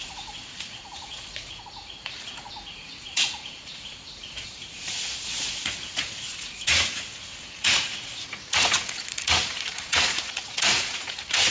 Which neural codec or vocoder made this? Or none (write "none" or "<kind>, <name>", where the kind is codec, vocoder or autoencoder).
vocoder, Vocos